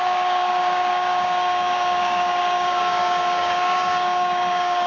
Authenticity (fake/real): fake